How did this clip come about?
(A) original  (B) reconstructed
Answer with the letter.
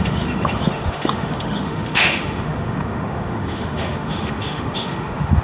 B